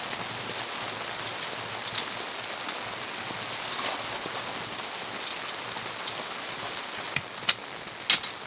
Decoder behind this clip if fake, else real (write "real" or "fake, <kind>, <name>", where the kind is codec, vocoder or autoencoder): real